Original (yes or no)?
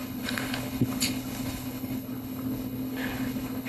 no